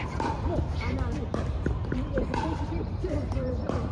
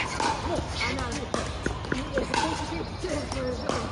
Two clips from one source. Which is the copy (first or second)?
first